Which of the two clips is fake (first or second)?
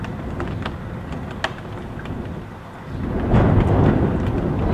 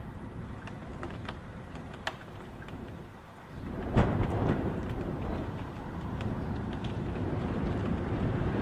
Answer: second